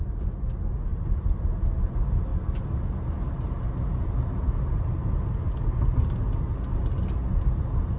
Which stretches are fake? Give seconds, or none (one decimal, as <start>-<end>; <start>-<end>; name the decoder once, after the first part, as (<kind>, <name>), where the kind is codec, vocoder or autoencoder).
none